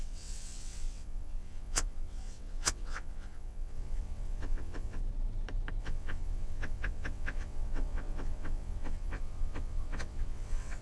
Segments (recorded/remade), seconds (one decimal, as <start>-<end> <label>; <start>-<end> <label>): 0.0-5.0 remade; 5.0-5.8 recorded; 5.8-10.8 remade